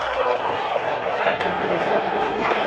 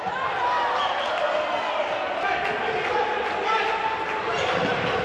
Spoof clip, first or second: first